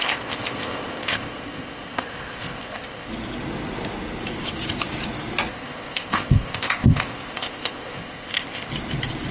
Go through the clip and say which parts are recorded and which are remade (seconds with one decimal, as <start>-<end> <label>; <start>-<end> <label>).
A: 0.0-3.1 remade; 3.1-5.5 recorded; 5.5-8.7 remade; 8.7-9.3 recorded